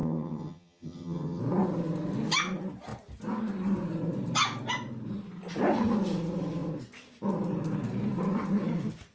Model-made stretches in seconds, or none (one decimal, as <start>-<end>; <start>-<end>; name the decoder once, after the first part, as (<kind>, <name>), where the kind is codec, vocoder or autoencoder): 0.0-1.4 (vocoder, HiFi-GAN)